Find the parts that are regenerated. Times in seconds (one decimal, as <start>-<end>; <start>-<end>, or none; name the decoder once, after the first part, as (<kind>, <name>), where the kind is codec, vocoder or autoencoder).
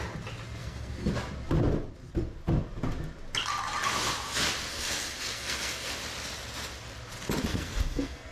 0.6-1.1 (codec, SNAC); 4.7-5.9; 7.5-8.3